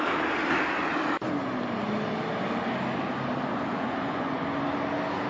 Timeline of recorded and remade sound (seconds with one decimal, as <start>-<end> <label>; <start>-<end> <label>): 0.0-3.5 recorded; 3.5-4.4 remade; 4.4-5.3 recorded